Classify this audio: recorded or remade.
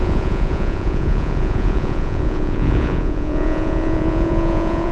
remade